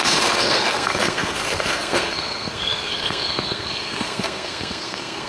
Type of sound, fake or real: fake